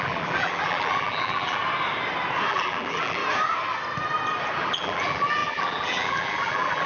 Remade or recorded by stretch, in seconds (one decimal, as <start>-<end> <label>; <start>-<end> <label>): 0.0-1.6 remade; 1.6-2.5 recorded; 2.5-3.2 remade; 3.2-4.6 recorded; 4.6-6.9 remade